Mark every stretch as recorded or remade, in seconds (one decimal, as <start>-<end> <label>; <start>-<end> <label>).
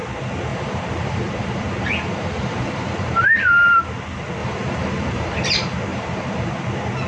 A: 0.0-0.5 recorded; 0.5-3.8 remade; 3.8-4.4 recorded; 4.4-5.5 remade; 5.5-5.9 recorded; 5.9-6.5 remade; 6.5-7.1 recorded